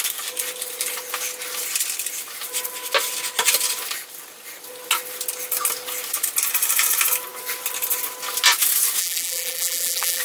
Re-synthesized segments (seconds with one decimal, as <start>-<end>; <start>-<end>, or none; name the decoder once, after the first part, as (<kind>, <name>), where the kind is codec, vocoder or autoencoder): 9.0-10.2 (vocoder, BigVGAN v2)